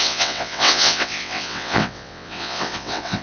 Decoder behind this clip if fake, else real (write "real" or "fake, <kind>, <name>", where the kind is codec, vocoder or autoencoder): fake, vocoder, WaveNeXt